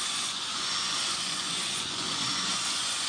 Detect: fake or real fake